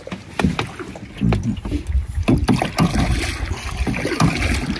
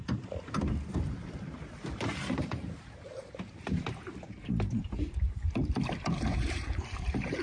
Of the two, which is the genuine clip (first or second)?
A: first